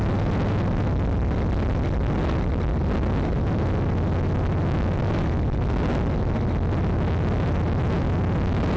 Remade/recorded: recorded